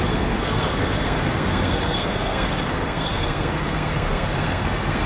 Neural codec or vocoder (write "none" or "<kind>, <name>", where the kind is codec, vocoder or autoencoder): codec, SNAC